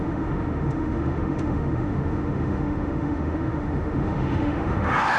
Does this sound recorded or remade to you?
remade